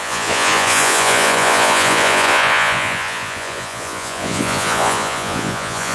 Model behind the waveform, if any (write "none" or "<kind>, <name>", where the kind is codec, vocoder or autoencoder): vocoder, Vocos